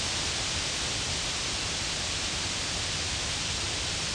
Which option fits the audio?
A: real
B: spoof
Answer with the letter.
A